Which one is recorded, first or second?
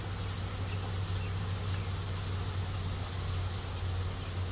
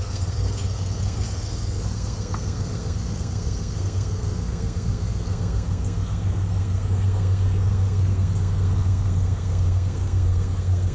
first